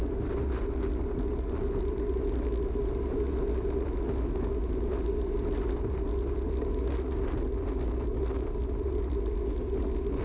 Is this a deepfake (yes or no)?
no